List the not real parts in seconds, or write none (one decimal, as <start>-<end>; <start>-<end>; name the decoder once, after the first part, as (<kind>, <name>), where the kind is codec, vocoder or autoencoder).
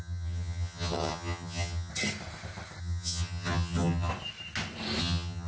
0.0-1.9 (vocoder, HiFi-GAN); 2.8-4.1; 5.0-5.5